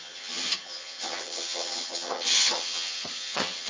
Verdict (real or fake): fake